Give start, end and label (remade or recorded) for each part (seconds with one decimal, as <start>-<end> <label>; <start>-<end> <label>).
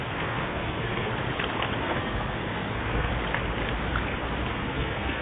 0.0-1.1 remade; 1.1-1.8 recorded; 1.8-3.1 remade; 3.1-4.5 recorded; 4.5-5.2 remade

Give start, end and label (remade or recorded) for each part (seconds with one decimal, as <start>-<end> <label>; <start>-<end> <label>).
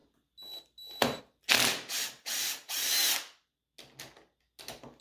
0.0-5.0 recorded